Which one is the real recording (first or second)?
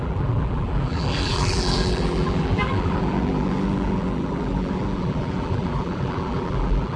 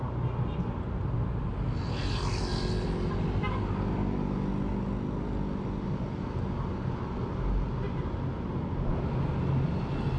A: second